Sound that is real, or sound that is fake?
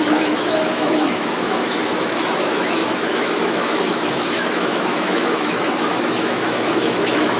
fake